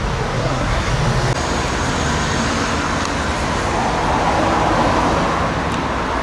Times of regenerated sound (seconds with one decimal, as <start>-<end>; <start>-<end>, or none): 0.4-0.9